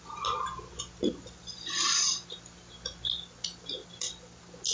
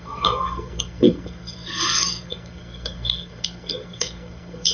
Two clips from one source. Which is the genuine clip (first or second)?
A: first